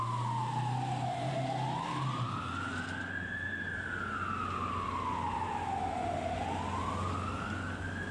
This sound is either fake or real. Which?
real